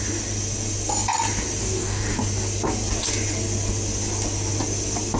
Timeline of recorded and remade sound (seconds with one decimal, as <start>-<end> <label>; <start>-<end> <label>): 0.0-1.6 recorded; 1.6-2.2 remade; 2.2-5.2 recorded